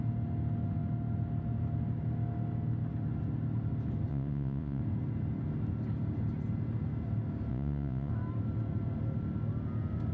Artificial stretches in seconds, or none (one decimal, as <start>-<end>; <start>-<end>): 4.1-4.8; 7.5-8.1